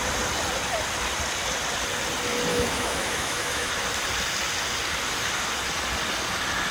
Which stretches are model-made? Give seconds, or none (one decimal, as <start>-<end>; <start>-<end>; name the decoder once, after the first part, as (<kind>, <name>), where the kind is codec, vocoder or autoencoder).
2.5-3.7 (autoencoder, DAC-VAE)